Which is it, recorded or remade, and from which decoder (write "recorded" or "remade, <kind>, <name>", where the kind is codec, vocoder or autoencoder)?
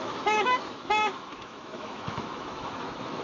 remade, autoencoder, DAC-VAE